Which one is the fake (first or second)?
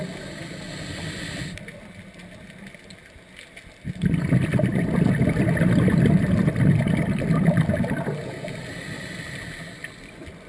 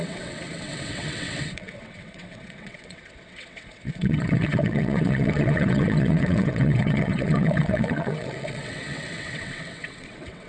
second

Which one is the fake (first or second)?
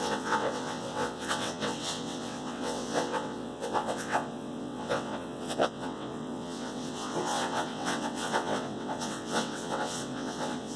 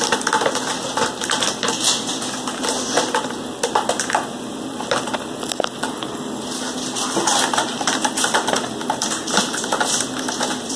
first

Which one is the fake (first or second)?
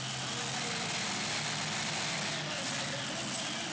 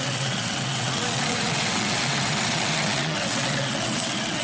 second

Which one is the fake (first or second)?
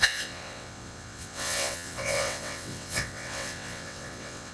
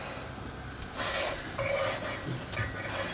first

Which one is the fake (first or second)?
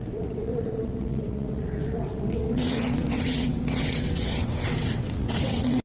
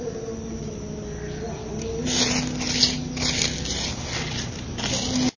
first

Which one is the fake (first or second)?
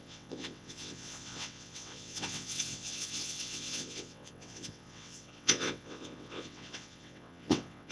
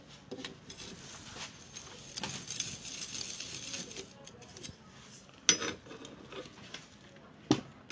first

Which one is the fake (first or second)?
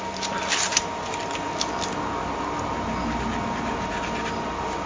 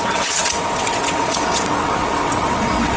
second